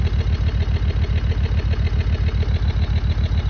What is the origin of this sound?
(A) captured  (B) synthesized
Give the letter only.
A